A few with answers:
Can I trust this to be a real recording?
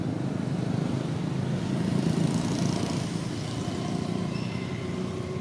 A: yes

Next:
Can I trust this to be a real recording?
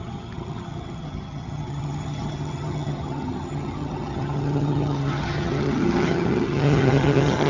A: no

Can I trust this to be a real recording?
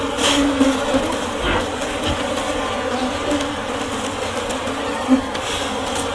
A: yes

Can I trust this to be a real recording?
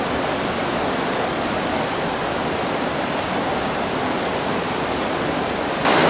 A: yes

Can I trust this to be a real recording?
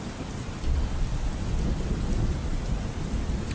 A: yes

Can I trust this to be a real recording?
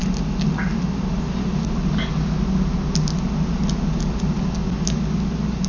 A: yes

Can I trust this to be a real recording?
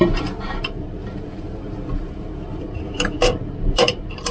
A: no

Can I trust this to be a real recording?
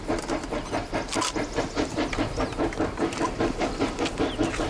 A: yes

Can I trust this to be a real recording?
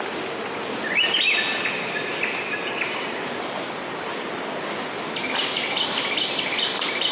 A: yes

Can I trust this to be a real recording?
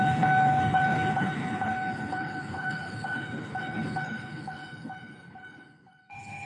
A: no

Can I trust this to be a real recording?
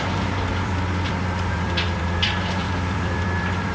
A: no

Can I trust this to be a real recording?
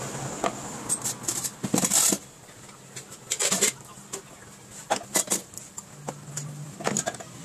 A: yes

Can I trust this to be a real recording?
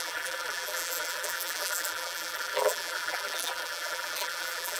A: no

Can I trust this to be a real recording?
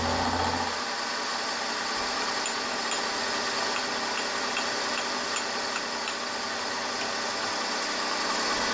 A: yes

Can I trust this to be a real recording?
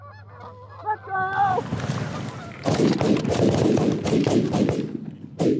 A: yes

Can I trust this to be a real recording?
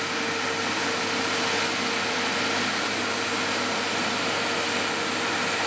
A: yes